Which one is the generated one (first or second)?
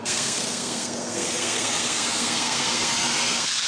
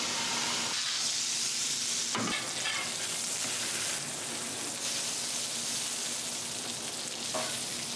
first